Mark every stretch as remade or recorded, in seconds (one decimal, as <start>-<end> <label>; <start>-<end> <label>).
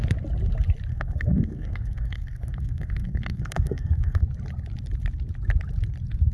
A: 0.0-0.9 recorded; 0.9-4.2 remade; 4.2-6.3 recorded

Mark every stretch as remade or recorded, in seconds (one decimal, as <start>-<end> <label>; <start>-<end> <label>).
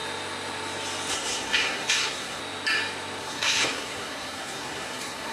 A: 0.0-1.1 recorded; 1.1-2.4 remade; 2.4-3.2 recorded; 3.2-5.3 remade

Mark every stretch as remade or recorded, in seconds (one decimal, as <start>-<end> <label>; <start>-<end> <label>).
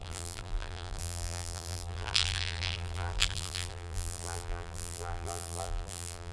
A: 0.0-6.3 remade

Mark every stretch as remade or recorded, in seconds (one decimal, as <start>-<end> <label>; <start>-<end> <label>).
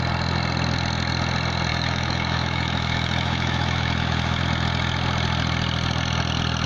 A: 0.0-1.7 recorded; 1.7-4.4 remade; 4.4-6.7 recorded